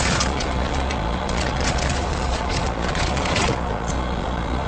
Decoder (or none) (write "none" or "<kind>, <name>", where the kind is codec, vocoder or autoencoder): vocoder, Vocos